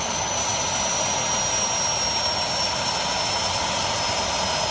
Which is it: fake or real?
real